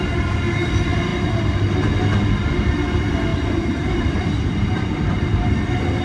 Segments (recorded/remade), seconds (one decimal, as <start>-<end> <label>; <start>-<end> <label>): 0.0-3.3 recorded; 3.3-5.5 remade; 5.5-6.0 recorded